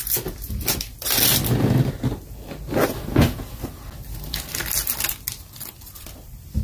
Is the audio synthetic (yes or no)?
no